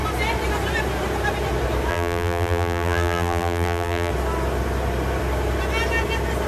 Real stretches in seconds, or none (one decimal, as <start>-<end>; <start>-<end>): 0.0-1.9; 4.1-6.5